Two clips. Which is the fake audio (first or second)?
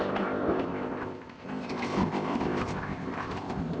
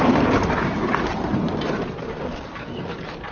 first